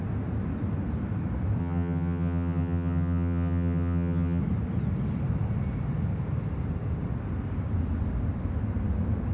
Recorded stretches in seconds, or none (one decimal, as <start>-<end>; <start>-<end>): 0.0-1.6; 4.4-9.3